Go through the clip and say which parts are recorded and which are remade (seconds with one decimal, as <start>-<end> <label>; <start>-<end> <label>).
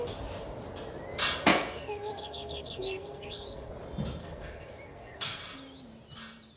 0.0-1.5 recorded; 1.5-3.7 remade; 3.7-4.2 recorded; 4.2-5.4 remade; 5.4-6.6 recorded